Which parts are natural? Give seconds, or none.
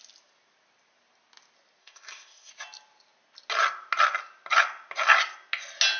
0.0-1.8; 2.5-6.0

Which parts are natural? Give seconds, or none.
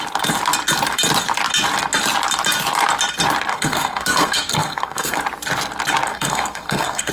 0.0-3.5; 5.2-6.1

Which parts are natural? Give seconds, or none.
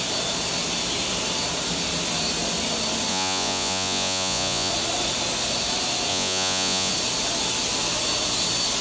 0.0-3.1; 4.7-6.1; 6.9-8.8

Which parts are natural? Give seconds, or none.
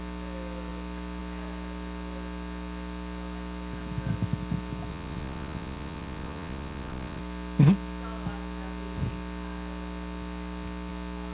0.0-4.9; 7.2-11.3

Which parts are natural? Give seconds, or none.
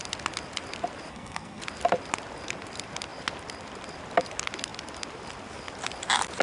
0.0-1.1; 1.6-6.4